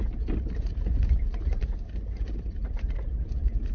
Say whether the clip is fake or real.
real